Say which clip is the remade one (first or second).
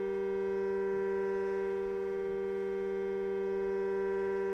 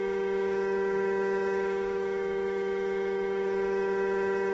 second